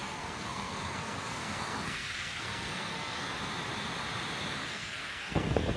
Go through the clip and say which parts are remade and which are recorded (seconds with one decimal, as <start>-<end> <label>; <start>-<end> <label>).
0.0-3.3 remade; 3.3-4.6 recorded; 4.6-5.8 remade